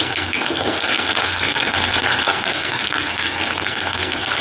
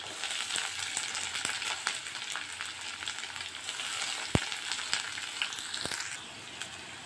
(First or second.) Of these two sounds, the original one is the second